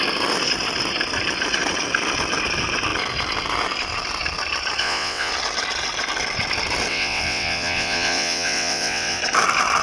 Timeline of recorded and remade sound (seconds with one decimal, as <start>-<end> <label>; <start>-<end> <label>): 0.0-4.8 recorded; 4.8-5.3 remade; 5.3-6.9 recorded; 6.9-9.2 remade; 9.2-9.8 recorded